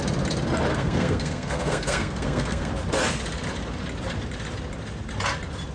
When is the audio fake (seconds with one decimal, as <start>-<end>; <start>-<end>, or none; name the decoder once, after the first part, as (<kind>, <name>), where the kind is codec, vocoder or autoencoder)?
0.7-2.7 (codec, SNAC)